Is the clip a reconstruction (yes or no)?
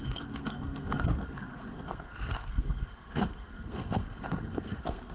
yes